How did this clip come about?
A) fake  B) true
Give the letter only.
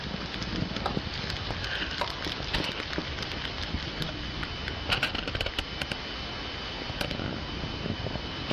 B